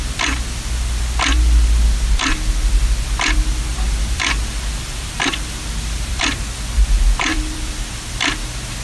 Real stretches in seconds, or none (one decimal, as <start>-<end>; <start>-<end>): 0.0-3.7; 6.2-7.3; 8.3-8.8